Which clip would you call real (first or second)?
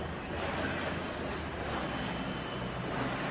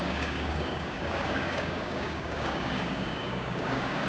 first